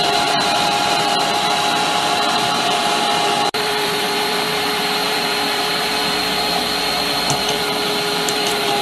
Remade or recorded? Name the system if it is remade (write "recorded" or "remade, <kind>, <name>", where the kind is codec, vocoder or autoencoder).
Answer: remade, vocoder, BigVGAN v2